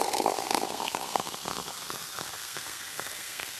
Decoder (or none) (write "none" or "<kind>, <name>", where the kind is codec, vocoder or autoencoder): codec, SNAC